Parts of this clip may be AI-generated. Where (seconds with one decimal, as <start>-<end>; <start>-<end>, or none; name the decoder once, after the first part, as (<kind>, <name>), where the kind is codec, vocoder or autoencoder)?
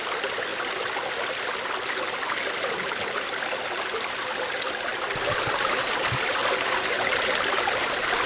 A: none